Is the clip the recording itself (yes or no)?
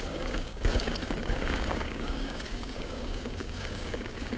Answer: no